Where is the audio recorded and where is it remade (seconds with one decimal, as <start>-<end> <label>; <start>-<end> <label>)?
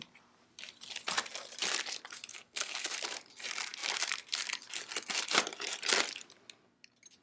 0.0-2.3 recorded; 2.3-2.9 remade; 2.9-7.2 recorded